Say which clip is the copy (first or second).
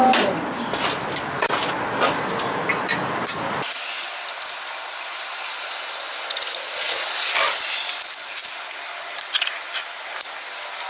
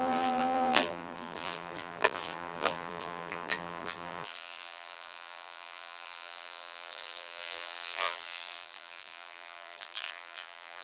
second